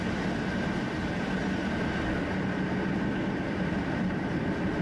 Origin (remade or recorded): recorded